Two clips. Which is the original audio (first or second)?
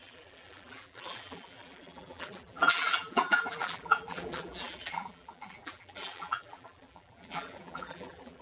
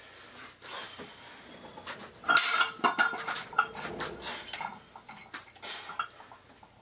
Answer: second